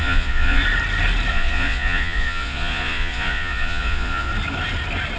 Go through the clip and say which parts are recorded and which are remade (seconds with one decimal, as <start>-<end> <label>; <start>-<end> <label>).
0.0-0.6 remade; 0.6-1.3 recorded; 1.3-4.3 remade; 4.3-5.2 recorded